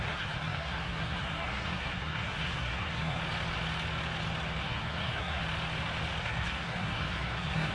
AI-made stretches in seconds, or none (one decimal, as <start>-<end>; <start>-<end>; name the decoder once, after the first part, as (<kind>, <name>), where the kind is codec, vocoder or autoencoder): 0.0-3.2 (codec, SNAC); 4.6-5.4; 6.2-7.7